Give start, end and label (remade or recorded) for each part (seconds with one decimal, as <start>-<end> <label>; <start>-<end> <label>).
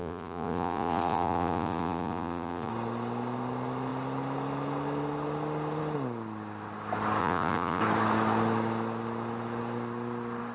0.0-2.7 remade; 2.7-7.2 recorded; 7.2-7.8 remade; 7.8-10.5 recorded